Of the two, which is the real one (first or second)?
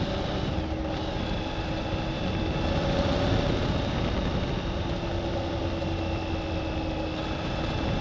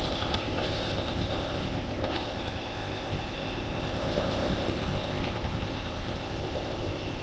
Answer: first